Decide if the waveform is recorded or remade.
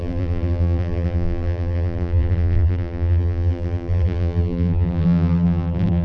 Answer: remade